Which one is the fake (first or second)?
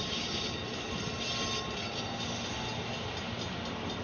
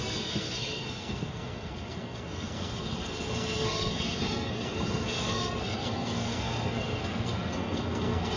second